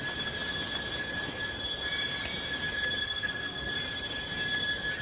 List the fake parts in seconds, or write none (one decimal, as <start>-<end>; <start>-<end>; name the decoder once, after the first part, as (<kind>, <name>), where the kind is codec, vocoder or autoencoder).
3.0-3.7 (codec, SNAC)